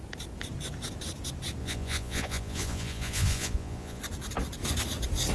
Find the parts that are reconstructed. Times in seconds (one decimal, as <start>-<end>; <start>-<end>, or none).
1.6-4.0